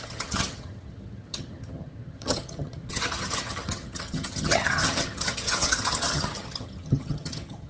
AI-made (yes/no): yes